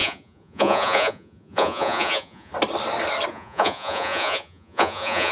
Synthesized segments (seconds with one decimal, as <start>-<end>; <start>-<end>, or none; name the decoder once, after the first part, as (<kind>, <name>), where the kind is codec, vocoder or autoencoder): 0.0-2.5 (vocoder, Vocos); 3.3-5.3